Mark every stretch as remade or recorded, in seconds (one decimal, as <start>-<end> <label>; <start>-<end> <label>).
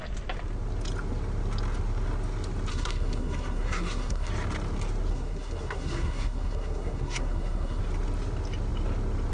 0.0-2.7 recorded; 2.7-4.3 remade; 4.3-5.1 recorded; 5.1-7.8 remade; 7.8-9.3 recorded